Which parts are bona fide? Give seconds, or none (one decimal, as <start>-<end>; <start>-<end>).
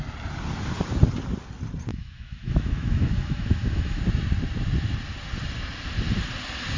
0.0-1.9; 4.0-6.8